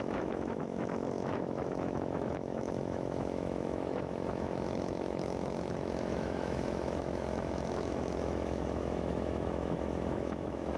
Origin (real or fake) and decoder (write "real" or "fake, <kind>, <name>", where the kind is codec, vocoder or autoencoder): fake, autoencoder, DAC-VAE